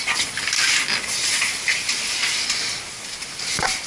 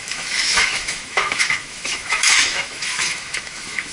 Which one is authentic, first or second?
first